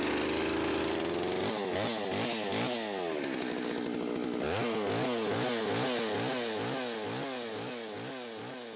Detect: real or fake real